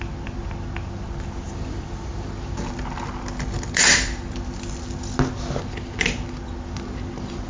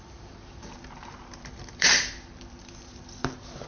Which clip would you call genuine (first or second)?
first